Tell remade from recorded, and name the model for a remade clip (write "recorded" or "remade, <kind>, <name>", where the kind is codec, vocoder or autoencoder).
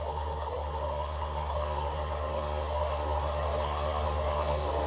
remade, codec, SNAC